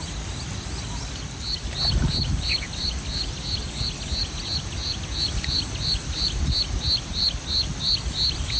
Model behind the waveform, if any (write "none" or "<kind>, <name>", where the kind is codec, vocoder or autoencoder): none